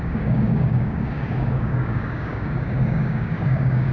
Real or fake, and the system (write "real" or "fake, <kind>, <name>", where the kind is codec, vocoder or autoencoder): fake, codec, DAC